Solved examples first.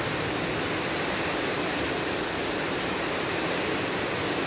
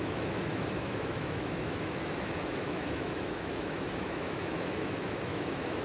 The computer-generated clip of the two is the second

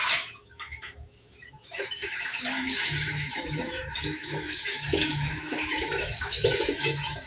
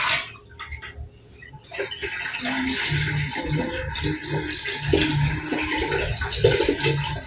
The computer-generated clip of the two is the first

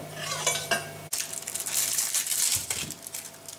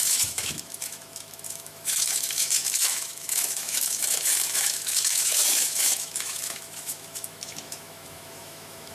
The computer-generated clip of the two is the second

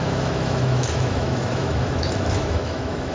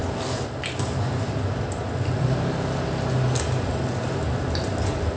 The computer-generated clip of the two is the first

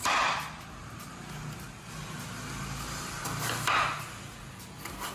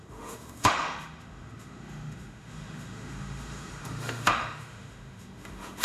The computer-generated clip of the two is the second